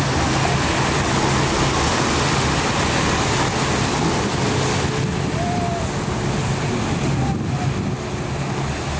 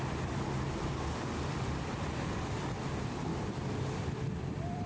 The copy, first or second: second